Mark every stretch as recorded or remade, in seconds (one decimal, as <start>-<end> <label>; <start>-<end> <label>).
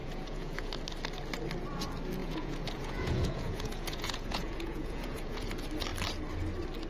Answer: 0.0-0.7 remade; 0.7-2.2 recorded; 2.2-5.5 remade; 5.5-6.9 recorded